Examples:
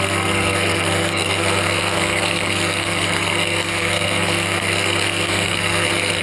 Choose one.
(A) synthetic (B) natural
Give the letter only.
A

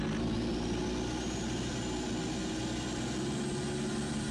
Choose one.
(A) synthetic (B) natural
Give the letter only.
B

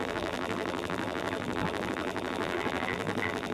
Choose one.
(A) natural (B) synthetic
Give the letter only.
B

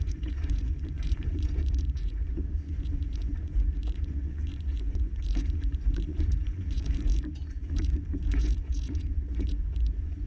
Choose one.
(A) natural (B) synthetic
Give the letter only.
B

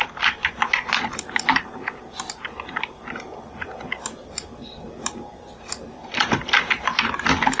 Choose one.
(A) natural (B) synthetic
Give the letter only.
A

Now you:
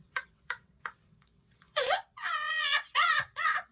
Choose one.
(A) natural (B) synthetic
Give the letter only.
B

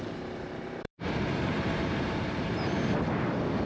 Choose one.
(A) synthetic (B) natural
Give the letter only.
A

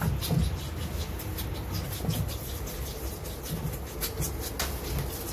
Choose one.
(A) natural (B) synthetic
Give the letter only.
A